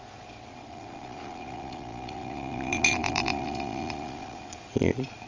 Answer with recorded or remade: remade